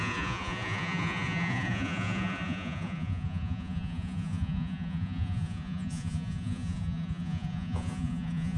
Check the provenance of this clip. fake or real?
fake